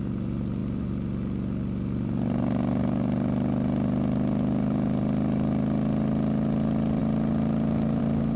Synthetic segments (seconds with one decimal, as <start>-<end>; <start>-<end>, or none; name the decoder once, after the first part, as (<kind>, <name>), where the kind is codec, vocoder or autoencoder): none